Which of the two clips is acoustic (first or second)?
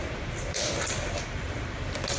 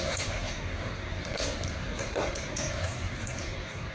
first